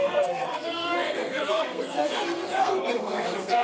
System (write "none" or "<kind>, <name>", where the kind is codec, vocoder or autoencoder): codec, SNAC